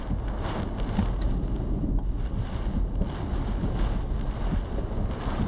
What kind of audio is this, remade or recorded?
recorded